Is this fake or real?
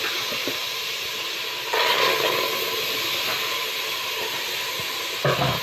real